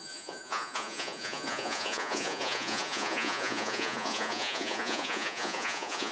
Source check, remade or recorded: remade